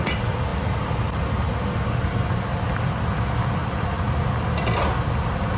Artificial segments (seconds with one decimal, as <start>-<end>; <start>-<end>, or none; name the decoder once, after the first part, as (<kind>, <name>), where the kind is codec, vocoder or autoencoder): none